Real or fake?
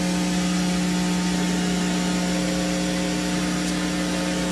real